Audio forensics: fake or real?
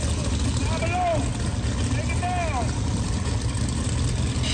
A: real